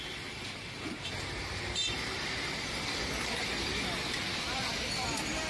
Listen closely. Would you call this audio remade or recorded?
remade